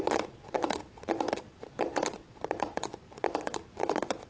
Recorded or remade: remade